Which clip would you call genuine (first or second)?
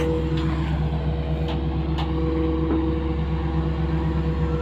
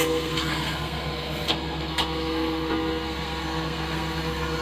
first